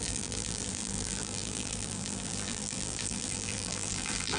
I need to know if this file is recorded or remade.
remade